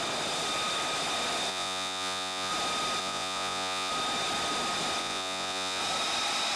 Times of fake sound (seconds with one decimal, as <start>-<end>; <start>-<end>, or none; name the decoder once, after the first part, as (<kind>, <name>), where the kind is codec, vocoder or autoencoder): 1.5-2.5 (vocoder, Vocos); 3.0-3.9; 5.0-5.8